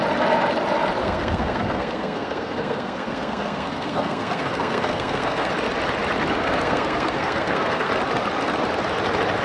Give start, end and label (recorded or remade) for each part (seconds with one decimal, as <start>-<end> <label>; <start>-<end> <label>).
0.0-1.0 recorded; 1.0-5.5 remade; 5.5-6.4 recorded; 6.4-7.9 remade; 7.9-9.4 recorded